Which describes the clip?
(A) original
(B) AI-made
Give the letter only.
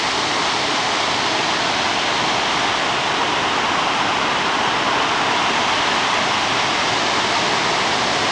A